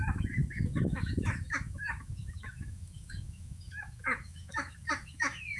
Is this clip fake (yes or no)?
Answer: yes